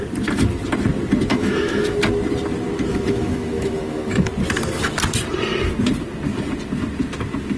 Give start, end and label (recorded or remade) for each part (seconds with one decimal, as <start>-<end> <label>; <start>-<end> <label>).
0.0-1.3 recorded; 1.3-2.0 remade; 2.0-2.9 recorded; 2.9-4.3 remade; 4.3-7.6 recorded